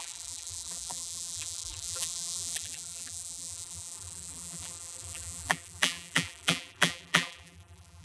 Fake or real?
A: fake